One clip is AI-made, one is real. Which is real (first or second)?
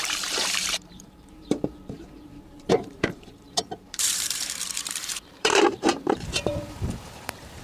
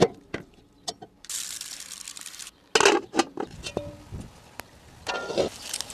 second